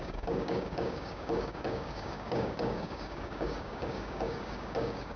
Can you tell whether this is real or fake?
fake